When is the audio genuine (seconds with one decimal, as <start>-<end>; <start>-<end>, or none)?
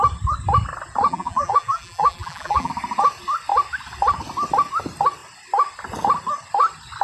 0.0-1.1; 2.7-7.0